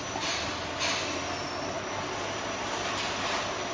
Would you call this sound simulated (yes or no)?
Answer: no